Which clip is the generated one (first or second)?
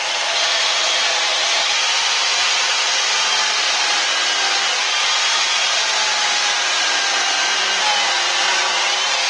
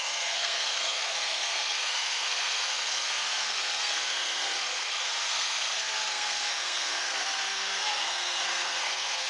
second